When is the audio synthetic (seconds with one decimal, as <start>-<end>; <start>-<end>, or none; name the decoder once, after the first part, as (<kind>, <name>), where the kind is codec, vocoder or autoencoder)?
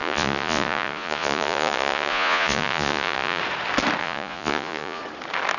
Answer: 0.0-3.4 (vocoder, Vocos); 4.0-5.0